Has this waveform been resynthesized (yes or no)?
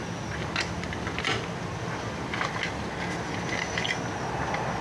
no